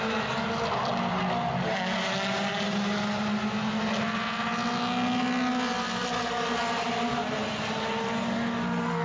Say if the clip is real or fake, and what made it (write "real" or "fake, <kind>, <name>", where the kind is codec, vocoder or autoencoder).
real